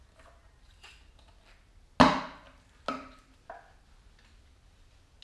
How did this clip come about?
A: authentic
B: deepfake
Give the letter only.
A